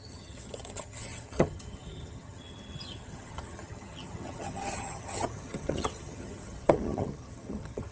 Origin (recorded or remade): remade